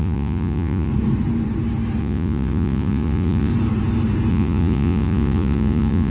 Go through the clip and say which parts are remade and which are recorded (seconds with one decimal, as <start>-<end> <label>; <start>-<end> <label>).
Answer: 0.0-0.9 remade; 0.9-2.0 recorded; 2.0-3.5 remade; 3.5-4.3 recorded; 4.3-6.1 remade